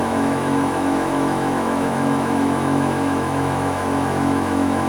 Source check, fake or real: fake